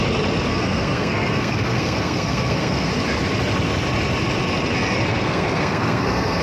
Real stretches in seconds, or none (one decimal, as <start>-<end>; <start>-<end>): 0.0-0.5; 2.9-5.1